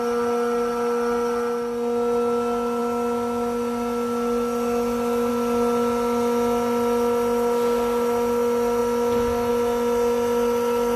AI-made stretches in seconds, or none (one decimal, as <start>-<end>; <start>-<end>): none